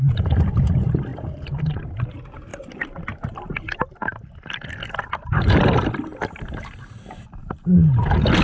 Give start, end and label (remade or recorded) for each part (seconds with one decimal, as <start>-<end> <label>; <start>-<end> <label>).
0.0-2.5 recorded; 2.5-3.3 remade; 3.3-6.1 recorded; 6.1-6.8 remade; 6.8-8.4 recorded

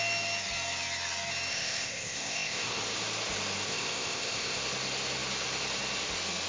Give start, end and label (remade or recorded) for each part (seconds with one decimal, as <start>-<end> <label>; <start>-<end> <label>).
0.0-1.5 recorded; 1.5-2.8 remade; 2.8-3.7 recorded; 3.7-4.6 remade; 4.6-6.5 recorded